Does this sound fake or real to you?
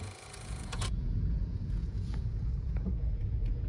fake